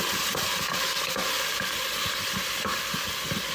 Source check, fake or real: fake